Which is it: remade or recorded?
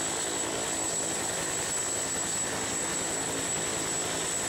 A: recorded